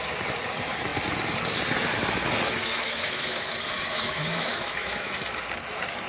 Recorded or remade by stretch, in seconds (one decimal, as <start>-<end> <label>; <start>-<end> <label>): 0.0-2.6 recorded; 2.6-5.1 remade; 5.1-6.1 recorded